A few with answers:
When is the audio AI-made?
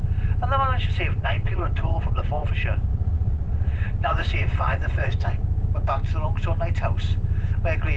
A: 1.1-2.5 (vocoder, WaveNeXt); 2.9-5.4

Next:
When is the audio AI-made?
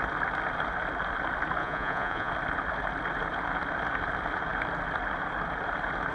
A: 1.6-2.3 (vocoder, Vocos)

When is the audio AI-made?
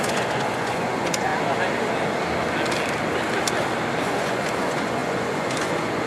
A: 0.0-1.3 (vocoder, Vocos); 4.0-6.1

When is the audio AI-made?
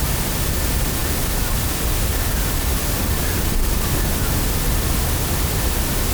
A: none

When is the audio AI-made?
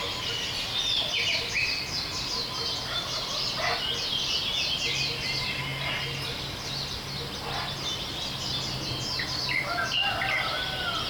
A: none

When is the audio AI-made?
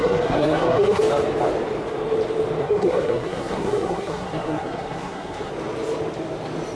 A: 0.0-1.0 (codec, SNAC); 2.6-5.5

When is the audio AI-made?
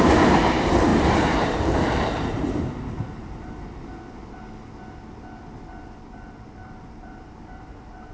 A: 0.0-0.9 (vocoder, BigVGAN v2); 1.5-3.8; 6.0-8.1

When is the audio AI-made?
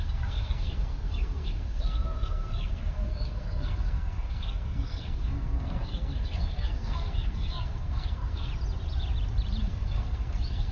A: 0.0-8.5 (codec, SNAC); 9.6-10.7